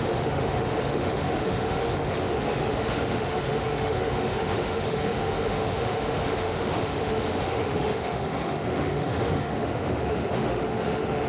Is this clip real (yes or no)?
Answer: no